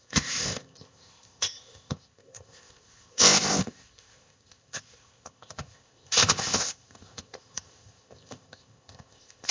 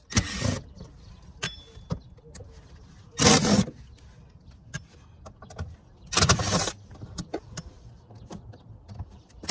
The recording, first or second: second